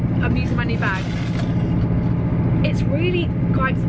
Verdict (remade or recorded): recorded